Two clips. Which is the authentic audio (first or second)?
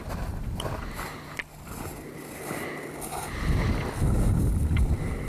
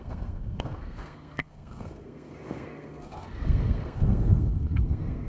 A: first